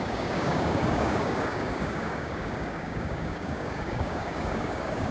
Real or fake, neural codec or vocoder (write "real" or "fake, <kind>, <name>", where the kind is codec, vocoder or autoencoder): fake, codec, DAC